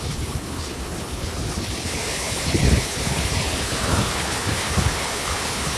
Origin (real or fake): fake